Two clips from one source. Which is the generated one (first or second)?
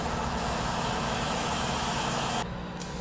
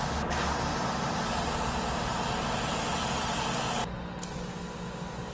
first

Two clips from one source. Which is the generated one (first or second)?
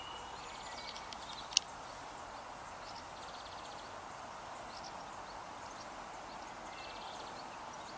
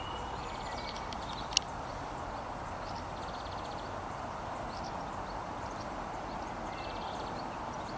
second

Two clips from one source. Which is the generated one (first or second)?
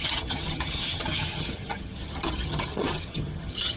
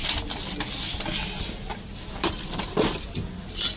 first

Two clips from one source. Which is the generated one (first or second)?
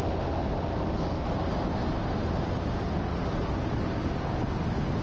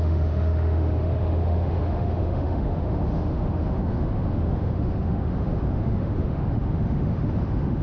second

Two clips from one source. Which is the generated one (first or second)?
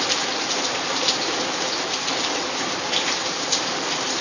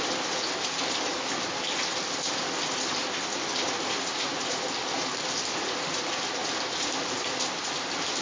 first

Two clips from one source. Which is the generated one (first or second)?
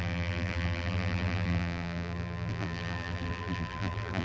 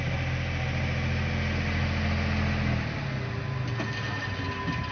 first